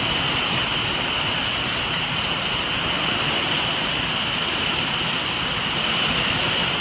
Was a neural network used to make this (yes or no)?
no